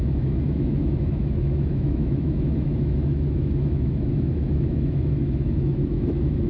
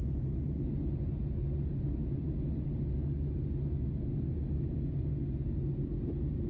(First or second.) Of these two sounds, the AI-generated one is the first